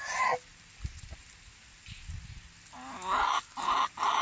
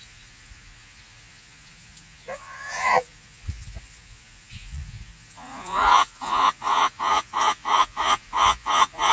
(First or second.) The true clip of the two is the first